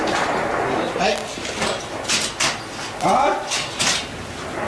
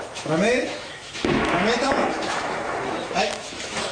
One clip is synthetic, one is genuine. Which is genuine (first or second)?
first